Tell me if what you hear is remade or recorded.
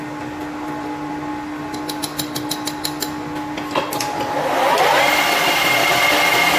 recorded